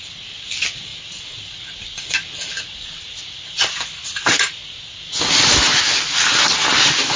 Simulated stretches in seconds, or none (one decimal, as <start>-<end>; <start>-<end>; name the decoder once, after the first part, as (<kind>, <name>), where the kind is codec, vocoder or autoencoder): none